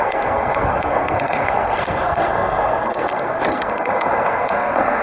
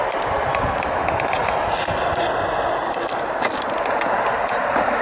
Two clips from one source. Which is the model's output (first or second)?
first